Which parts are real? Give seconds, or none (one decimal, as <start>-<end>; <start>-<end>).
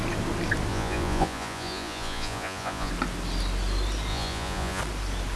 0.0-0.7; 2.9-4.1; 4.8-5.4